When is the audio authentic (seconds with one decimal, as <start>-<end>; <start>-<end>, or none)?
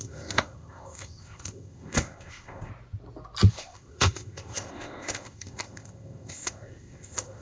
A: 2.7-3.5